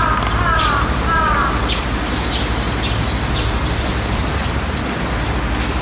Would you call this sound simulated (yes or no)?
no